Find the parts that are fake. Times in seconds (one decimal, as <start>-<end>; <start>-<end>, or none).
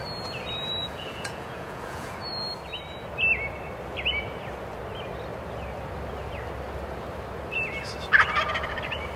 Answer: 0.8-2.2